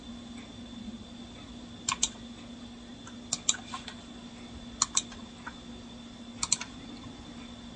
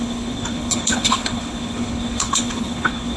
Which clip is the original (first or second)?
first